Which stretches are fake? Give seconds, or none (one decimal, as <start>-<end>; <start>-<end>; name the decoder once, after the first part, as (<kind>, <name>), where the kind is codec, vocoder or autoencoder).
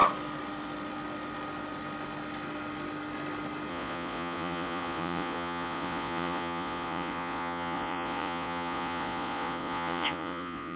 3.7-10.8 (vocoder, Vocos)